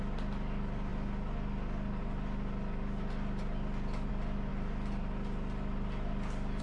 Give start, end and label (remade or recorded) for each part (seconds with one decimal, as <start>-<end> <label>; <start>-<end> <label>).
0.0-6.6 recorded